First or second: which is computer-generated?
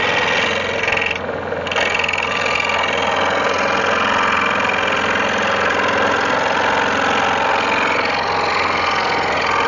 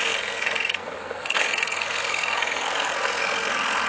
second